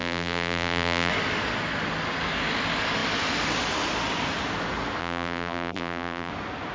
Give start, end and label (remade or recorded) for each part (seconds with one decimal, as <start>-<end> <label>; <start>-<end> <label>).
0.0-1.1 remade; 1.1-5.0 recorded; 5.0-6.3 remade; 6.3-6.7 recorded